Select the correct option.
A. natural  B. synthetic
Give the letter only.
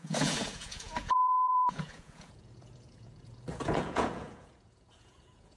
B